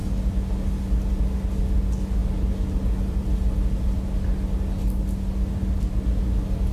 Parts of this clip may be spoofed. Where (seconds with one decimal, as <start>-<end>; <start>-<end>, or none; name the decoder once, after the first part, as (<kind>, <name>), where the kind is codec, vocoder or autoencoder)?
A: none